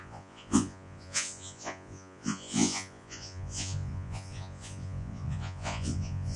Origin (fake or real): fake